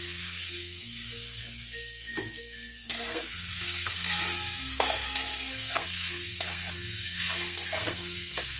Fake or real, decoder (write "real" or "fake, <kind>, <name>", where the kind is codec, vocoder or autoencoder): fake, codec, SNAC